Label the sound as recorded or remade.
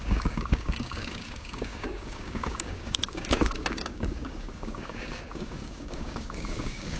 remade